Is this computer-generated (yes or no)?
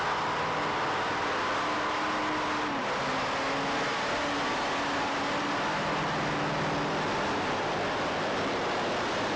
no